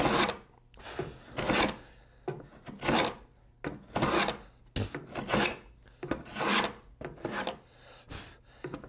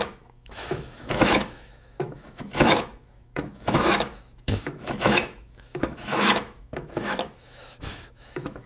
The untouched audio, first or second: first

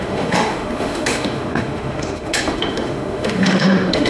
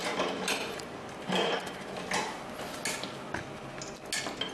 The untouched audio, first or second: second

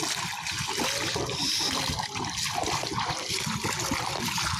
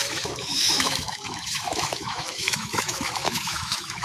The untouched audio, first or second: first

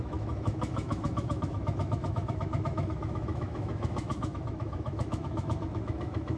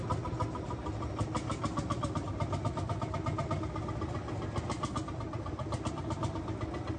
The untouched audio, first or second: second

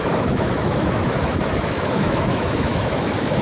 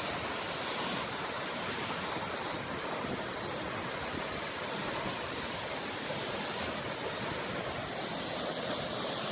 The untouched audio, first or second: second